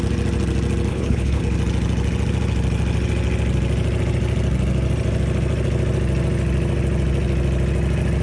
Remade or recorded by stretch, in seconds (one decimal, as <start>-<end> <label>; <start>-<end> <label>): 0.0-0.9 recorded; 0.9-1.4 remade; 1.4-8.2 recorded